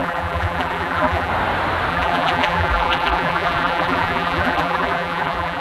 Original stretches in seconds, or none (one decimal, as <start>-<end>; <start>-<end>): 1.3-1.9